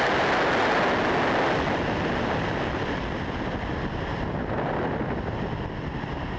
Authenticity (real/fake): real